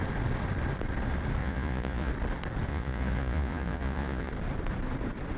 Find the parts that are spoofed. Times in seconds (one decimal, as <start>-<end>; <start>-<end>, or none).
1.4-2.1; 2.7-4.3